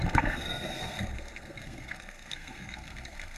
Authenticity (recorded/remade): remade